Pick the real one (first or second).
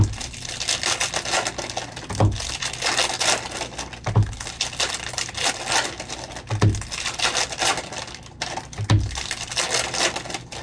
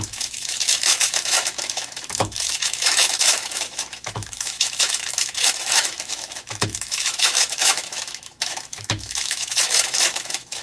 first